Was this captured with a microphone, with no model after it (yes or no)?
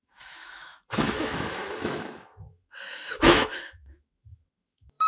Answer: no